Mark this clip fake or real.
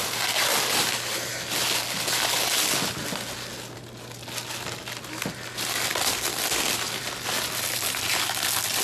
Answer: real